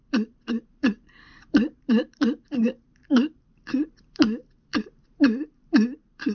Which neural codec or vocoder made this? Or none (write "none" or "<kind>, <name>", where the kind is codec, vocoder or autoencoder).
vocoder, BigVGAN v2